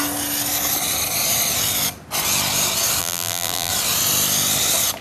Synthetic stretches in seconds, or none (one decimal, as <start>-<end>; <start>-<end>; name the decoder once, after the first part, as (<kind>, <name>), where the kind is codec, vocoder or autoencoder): 3.0-3.7 (vocoder, BigVGAN v2)